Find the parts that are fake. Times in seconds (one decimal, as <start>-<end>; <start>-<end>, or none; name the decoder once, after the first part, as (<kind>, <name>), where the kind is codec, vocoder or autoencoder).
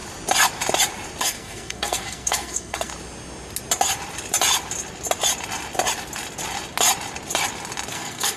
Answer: 1.2-2.9 (codec, SNAC); 7.9-8.4